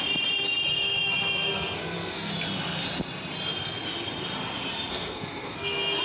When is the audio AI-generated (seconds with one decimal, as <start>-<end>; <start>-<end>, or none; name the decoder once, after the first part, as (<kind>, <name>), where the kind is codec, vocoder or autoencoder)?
0.7-2.3 (codec, SNAC); 4.9-6.0